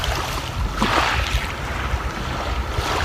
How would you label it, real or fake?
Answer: real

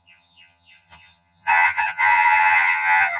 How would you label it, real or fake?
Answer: fake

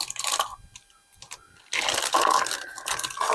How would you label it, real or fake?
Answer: real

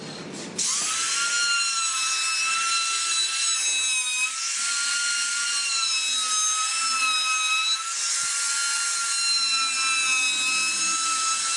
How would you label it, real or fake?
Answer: real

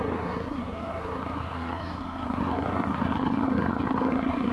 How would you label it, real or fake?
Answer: fake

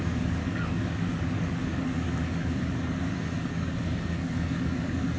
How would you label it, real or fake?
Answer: fake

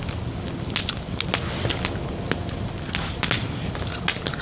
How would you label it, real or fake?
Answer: real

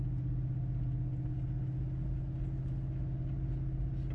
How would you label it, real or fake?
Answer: real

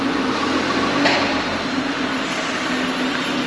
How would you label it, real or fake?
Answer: real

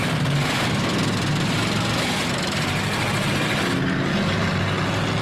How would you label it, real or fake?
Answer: real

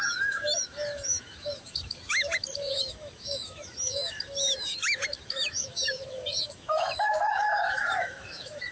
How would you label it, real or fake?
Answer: fake